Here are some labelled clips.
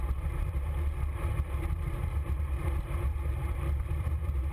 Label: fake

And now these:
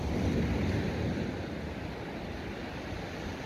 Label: real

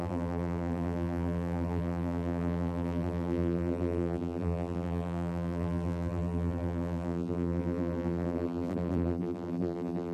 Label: fake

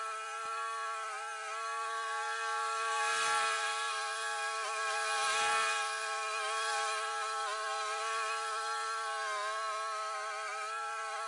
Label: real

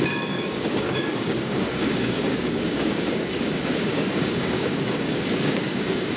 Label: fake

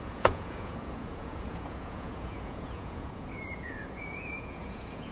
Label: fake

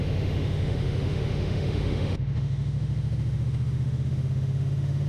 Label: fake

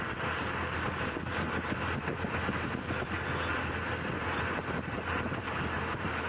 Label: real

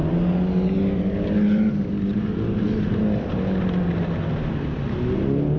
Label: real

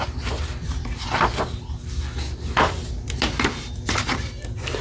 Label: real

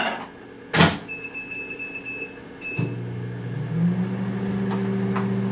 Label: real